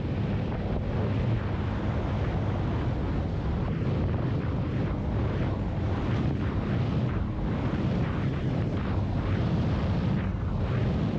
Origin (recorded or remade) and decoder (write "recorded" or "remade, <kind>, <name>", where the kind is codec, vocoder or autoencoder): recorded